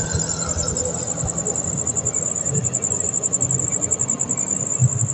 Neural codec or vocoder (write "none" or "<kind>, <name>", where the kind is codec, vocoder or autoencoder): none